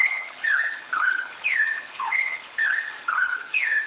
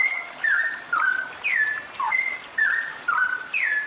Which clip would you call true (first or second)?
second